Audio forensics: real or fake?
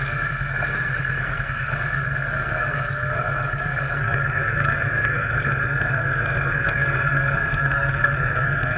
fake